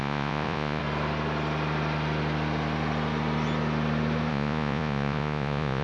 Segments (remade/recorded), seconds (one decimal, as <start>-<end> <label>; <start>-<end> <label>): 0.0-0.8 remade; 0.8-4.3 recorded; 4.3-5.8 remade